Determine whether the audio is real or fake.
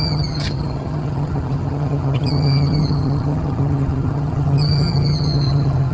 fake